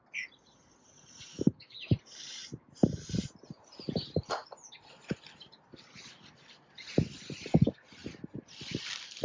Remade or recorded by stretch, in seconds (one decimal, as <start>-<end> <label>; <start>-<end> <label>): 0.0-1.3 recorded; 1.3-1.9 remade; 1.9-9.2 recorded

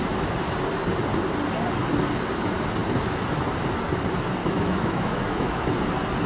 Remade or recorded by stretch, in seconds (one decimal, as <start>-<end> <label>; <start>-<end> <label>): 0.0-4.4 recorded; 4.4-5.6 remade; 5.6-6.3 recorded

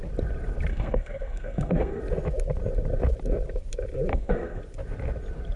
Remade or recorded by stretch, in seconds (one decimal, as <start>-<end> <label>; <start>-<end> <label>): 0.0-0.7 recorded; 0.7-2.0 remade; 2.0-4.1 recorded; 4.1-4.6 remade; 4.6-5.6 recorded

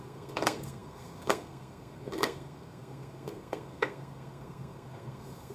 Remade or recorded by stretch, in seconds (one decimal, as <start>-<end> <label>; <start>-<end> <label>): 0.0-5.5 remade

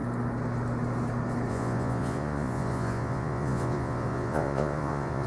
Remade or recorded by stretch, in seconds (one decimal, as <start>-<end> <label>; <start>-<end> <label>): 0.0-1.5 recorded; 1.5-5.3 remade

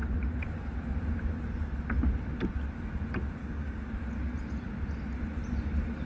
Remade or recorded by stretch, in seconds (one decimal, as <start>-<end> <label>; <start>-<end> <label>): 0.0-3.4 recorded; 3.4-3.9 remade; 3.9-6.1 recorded

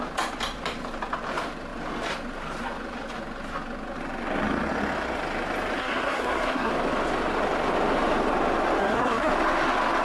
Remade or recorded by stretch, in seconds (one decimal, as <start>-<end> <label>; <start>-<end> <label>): 0.0-5.8 recorded; 5.8-6.7 remade; 6.7-8.8 recorded; 8.8-9.3 remade; 9.3-10.0 recorded